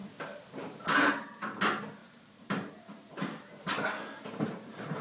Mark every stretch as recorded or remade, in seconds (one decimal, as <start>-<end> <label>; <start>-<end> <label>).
0.0-2.0 recorded; 2.0-3.5 remade; 3.5-5.0 recorded